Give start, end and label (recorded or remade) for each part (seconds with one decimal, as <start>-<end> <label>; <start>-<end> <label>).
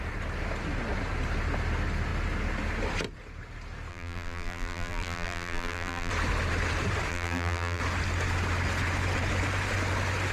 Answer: 0.0-3.9 recorded; 3.9-6.1 remade; 6.1-7.1 recorded; 7.1-7.8 remade; 7.8-10.3 recorded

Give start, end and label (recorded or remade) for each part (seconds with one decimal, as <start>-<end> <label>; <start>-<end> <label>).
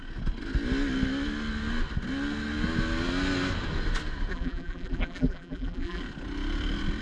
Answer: 0.0-4.3 recorded; 4.3-6.0 remade; 6.0-7.0 recorded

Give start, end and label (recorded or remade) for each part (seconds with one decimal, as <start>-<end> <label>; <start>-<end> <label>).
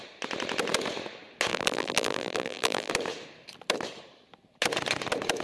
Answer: 0.0-1.5 recorded; 1.5-2.9 remade; 2.9-5.4 recorded